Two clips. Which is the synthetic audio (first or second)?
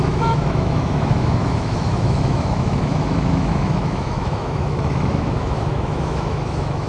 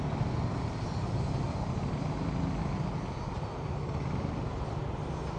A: first